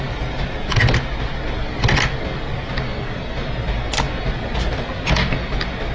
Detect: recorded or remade recorded